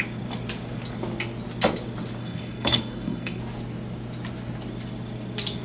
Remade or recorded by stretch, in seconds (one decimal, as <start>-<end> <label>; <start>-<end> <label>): 0.0-2.2 recorded; 2.2-3.4 remade; 3.4-5.6 recorded